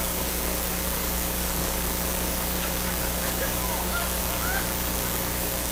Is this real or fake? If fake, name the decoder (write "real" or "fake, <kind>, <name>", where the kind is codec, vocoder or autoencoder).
fake, codec, DAC